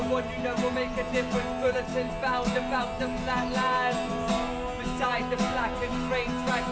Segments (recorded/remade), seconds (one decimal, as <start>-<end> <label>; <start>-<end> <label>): 0.0-6.7 recorded